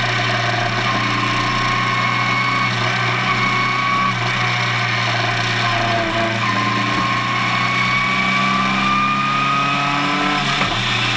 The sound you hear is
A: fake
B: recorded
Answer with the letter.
B